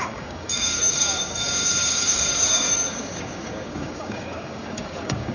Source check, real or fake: fake